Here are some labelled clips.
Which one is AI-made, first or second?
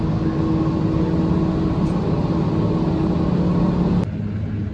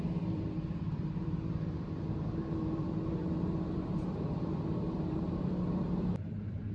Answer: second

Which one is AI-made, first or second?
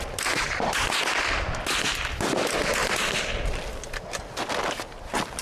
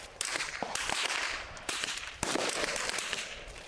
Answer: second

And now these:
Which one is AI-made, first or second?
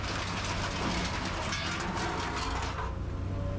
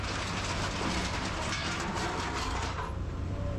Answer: second